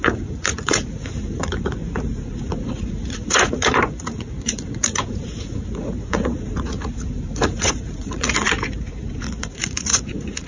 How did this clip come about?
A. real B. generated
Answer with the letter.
B